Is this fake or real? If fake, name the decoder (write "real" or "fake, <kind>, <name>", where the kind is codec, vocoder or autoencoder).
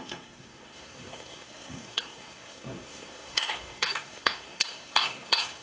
fake, codec, SNAC